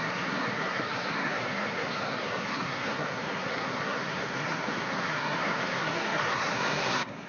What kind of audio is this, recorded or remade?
remade